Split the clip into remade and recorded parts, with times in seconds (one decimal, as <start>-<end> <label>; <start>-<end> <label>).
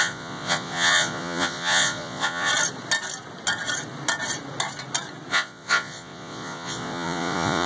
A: 0.0-2.5 remade; 2.5-5.3 recorded; 5.3-7.7 remade